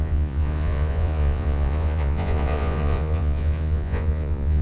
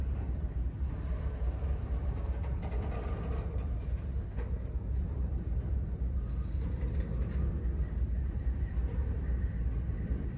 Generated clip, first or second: first